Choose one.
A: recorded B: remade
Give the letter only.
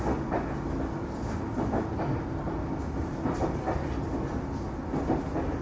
A